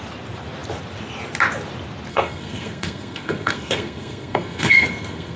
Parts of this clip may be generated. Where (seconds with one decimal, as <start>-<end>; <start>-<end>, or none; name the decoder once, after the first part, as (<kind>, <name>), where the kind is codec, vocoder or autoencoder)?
2.1-5.4 (codec, SNAC)